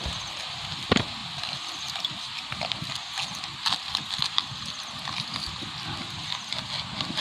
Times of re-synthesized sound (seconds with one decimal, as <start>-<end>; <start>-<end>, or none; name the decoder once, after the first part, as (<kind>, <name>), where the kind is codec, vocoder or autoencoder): none